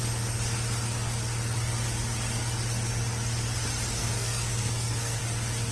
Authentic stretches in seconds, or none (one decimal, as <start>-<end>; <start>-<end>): 0.0-4.0; 5.2-5.7

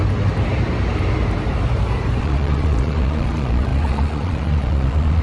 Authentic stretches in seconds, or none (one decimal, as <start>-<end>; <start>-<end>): 0.0-2.2

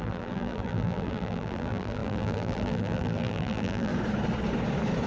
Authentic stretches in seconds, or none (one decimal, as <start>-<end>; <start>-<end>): 3.9-5.1

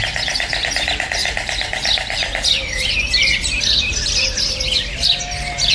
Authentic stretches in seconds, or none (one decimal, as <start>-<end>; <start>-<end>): 0.0-1.2; 4.6-5.7